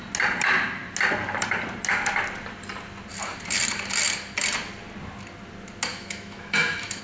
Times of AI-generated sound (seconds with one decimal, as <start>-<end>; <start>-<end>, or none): 5.9-7.0